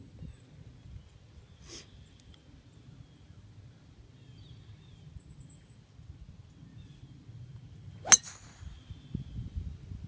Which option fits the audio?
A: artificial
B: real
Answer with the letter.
B